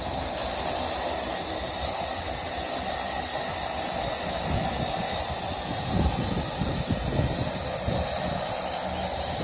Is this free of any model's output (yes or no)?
yes